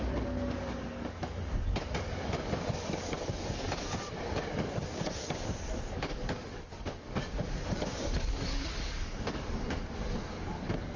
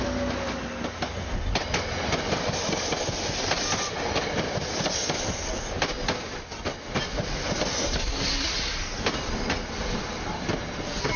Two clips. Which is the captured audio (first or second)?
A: second